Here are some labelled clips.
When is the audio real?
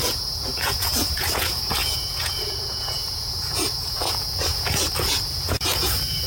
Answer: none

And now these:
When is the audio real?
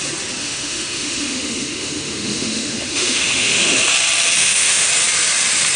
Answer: 0.0-0.4; 3.8-4.4; 4.9-5.8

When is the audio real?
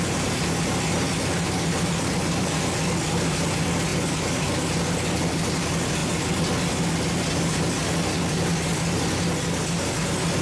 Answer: 0.0-10.4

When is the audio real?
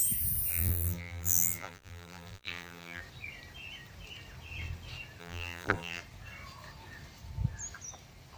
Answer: 0.0-0.5; 3.0-5.2; 6.0-8.4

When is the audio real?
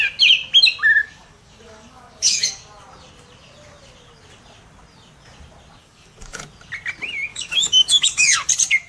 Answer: 0.0-1.0; 2.5-5.8; 6.4-7.3; 8.5-8.9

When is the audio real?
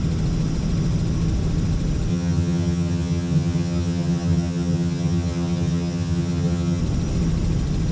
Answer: 0.0-2.1; 6.8-7.9